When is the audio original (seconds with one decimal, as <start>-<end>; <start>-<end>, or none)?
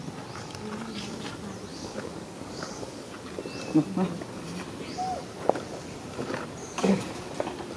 0.0-1.7; 3.1-6.6; 7.3-7.8